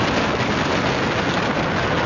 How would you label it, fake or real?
real